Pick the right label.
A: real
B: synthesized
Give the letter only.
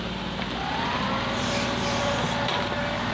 B